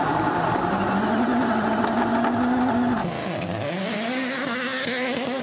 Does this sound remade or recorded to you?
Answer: recorded